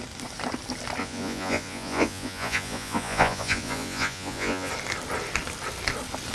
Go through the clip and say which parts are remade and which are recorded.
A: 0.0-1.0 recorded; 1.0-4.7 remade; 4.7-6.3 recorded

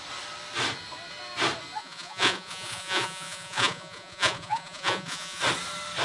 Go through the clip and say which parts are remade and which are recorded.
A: 0.0-1.8 recorded; 1.8-5.4 remade; 5.4-6.0 recorded

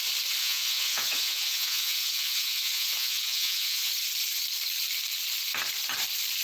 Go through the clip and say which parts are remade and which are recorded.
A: 0.0-0.4 recorded; 0.4-3.9 remade; 3.9-6.4 recorded

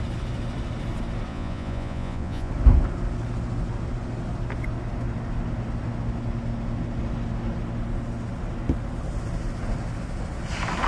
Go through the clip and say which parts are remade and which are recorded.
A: 0.0-1.3 recorded; 1.3-2.5 remade; 2.5-10.9 recorded

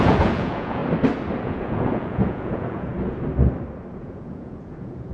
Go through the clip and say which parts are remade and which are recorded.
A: 0.0-0.8 remade; 0.8-1.4 recorded; 1.4-2.9 remade; 2.9-4.0 recorded; 4.0-5.1 remade

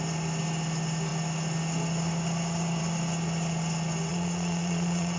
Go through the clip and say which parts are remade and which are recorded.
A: 0.0-4.1 recorded; 4.1-5.2 remade

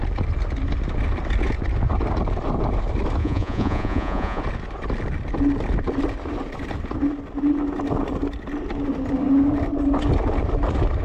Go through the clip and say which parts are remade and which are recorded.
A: 0.0-3.2 recorded; 3.2-4.4 remade; 4.4-11.0 recorded